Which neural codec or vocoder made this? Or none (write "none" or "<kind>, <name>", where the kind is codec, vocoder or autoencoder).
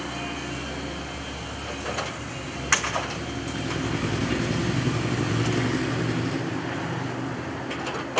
none